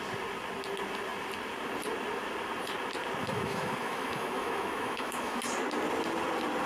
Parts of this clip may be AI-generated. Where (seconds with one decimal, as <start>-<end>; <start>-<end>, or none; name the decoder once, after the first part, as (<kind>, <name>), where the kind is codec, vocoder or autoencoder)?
3.2-5.4 (autoencoder, DAC-VAE)